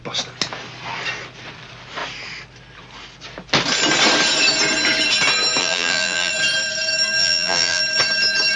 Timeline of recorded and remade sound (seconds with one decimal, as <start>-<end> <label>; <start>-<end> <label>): 0.0-5.6 recorded; 5.6-6.3 remade; 6.3-7.2 recorded; 7.2-7.8 remade; 7.8-8.6 recorded